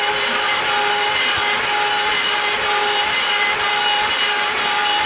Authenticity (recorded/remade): recorded